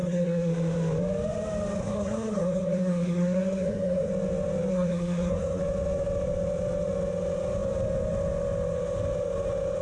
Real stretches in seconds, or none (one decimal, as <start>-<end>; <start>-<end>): 0.5-1.8; 4.1-4.7; 5.6-9.8